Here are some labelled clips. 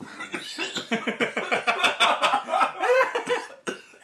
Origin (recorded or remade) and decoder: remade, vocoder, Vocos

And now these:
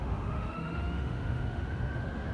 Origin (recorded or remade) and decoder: remade, autoencoder, DAC-VAE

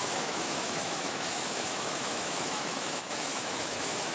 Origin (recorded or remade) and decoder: remade, autoencoder, DAC-VAE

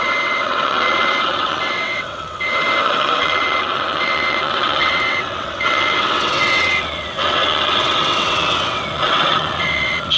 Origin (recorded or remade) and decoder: remade, vocoder, WaveNeXt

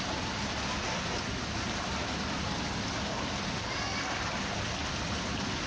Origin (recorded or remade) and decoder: recorded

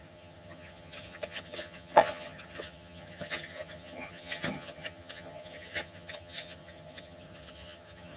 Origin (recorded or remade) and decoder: remade, vocoder, HiFi-GAN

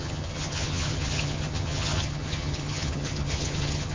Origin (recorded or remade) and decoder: remade, vocoder, HiFi-GAN